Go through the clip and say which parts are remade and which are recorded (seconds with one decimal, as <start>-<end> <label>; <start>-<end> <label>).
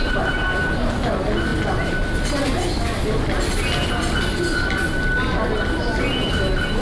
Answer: 0.0-6.8 recorded